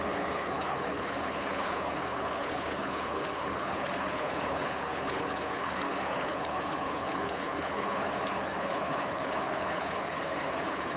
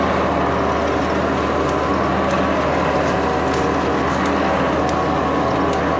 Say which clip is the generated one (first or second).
first